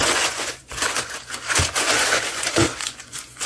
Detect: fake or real fake